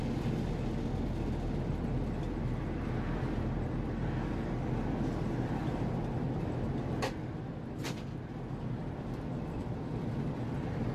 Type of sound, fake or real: real